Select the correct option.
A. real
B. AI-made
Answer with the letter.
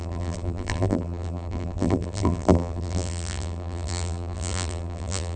B